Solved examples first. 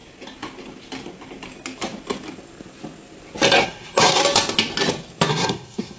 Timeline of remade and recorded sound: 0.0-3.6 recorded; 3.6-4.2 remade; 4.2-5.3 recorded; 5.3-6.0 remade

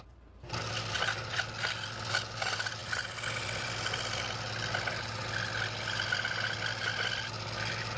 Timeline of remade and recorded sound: 0.0-8.0 recorded

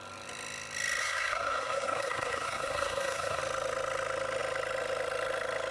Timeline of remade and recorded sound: 0.0-1.0 recorded; 1.0-3.4 remade; 3.4-5.7 recorded

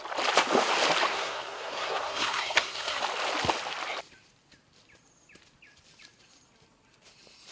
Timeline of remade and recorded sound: 0.0-1.1 recorded; 1.1-3.0 remade; 3.0-7.5 recorded

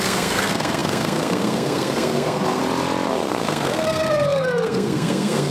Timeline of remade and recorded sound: 0.0-2.6 remade; 2.6-3.1 recorded; 3.1-5.5 remade

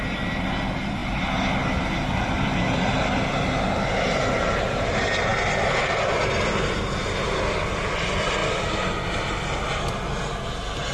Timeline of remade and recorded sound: 0.0-10.9 recorded

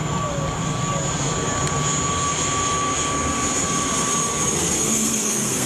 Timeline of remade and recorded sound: 0.0-4.6 recorded; 4.6-5.7 remade